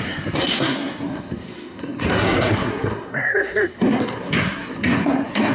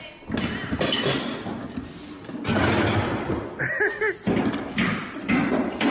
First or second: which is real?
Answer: second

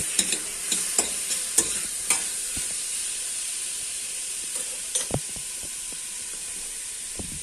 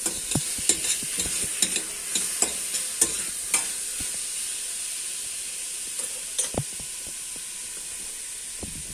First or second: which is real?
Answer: second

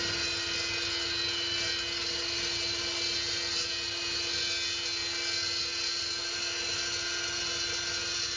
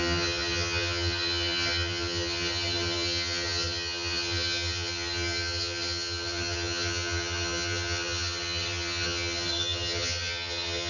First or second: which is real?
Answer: first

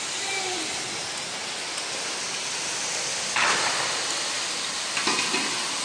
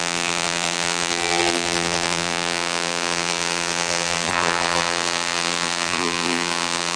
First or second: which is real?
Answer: first